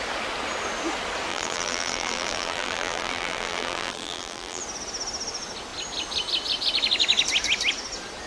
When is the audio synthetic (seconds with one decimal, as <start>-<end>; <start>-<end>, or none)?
1.3-4.6